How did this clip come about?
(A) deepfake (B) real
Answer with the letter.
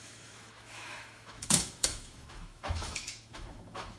A